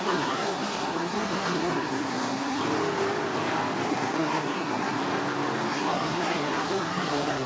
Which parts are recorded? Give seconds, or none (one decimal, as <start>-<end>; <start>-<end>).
2.6-3.9; 5.0-5.7

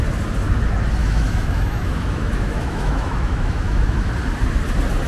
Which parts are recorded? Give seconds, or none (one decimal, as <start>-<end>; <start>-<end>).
0.0-1.0; 4.1-5.1

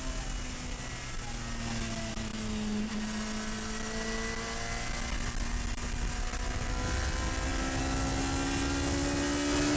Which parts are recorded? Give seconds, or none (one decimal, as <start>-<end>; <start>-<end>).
0.0-9.8